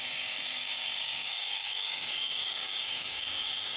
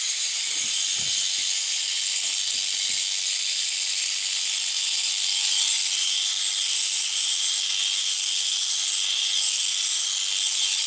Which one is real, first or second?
second